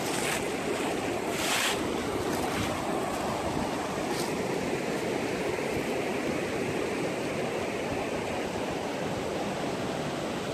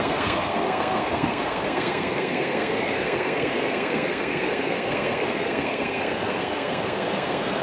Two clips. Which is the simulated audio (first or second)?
second